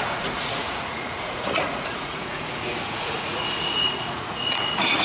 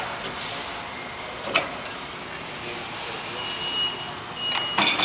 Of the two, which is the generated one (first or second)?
first